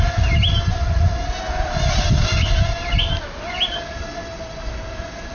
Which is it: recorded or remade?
recorded